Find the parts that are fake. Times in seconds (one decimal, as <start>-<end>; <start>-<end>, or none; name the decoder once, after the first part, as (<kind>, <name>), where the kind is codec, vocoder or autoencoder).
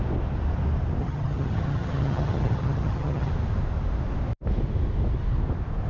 1.0-3.3 (vocoder, HiFi-GAN)